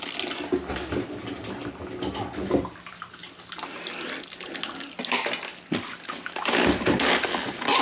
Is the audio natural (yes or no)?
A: yes